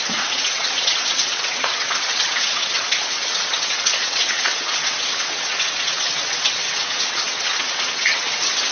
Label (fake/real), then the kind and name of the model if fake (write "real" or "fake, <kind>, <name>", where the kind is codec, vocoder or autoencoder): fake, vocoder, WaveNeXt